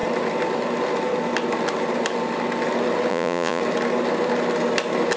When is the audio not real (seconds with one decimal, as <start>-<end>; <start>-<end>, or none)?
3.1-3.6